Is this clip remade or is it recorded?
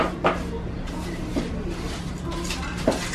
recorded